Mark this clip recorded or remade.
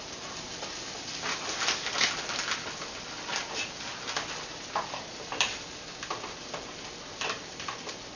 recorded